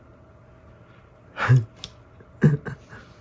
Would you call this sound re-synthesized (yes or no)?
no